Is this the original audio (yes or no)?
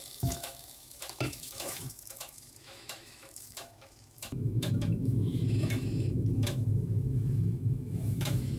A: no